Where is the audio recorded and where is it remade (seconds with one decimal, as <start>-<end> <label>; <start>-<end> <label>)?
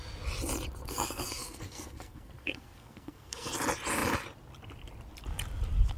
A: 0.0-0.8 recorded; 0.8-3.5 remade; 3.5-6.0 recorded